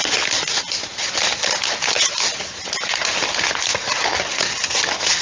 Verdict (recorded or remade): recorded